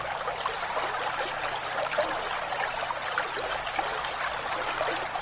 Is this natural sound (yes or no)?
yes